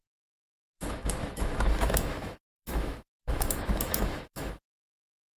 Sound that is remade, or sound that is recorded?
remade